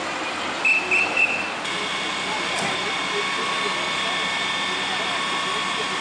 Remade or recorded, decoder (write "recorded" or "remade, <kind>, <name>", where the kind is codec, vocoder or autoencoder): recorded